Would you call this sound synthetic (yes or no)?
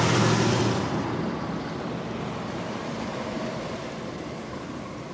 yes